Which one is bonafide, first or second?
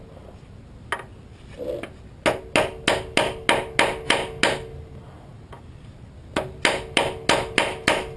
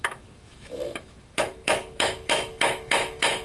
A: first